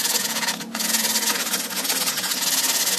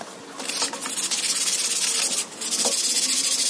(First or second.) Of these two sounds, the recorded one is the second